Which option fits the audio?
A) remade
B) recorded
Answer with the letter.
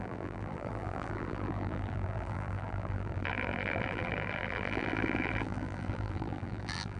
A